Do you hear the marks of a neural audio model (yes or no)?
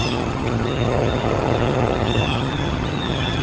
yes